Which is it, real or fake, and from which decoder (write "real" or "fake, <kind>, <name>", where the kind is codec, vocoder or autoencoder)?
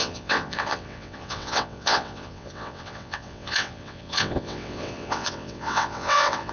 fake, vocoder, WaveNeXt